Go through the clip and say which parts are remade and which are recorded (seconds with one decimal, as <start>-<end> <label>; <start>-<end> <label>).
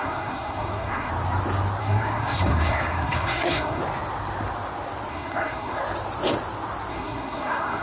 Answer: 0.0-1.1 remade; 1.1-1.8 recorded; 1.8-3.8 remade; 3.8-5.1 recorded; 5.1-5.8 remade; 5.8-6.9 recorded; 6.9-7.8 remade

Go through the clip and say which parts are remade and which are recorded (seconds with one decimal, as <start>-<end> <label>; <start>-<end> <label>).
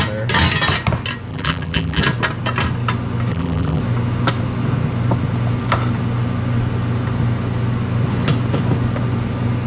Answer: 0.0-1.3 recorded; 1.3-2.0 remade; 2.0-3.3 recorded; 3.3-3.8 remade; 3.8-9.7 recorded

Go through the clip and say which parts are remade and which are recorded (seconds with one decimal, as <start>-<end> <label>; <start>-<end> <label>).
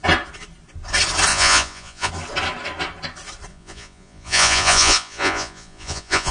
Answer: 0.0-1.3 recorded; 1.3-2.1 remade; 2.1-3.5 recorded; 3.5-6.3 remade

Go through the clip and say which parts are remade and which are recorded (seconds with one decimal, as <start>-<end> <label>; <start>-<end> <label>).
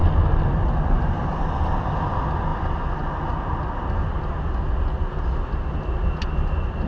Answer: 0.0-6.9 recorded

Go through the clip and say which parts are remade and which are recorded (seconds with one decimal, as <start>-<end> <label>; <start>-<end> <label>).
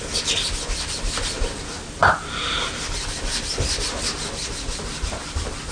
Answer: 0.0-5.7 recorded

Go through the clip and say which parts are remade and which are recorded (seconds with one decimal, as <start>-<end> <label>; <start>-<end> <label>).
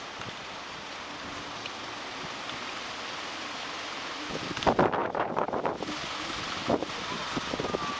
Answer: 0.0-5.0 recorded; 5.0-5.6 remade; 5.6-8.0 recorded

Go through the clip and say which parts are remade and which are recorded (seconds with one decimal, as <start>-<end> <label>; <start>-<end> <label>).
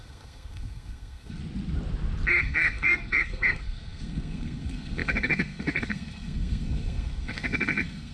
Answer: 0.0-1.4 remade; 1.4-2.4 recorded; 2.4-8.1 remade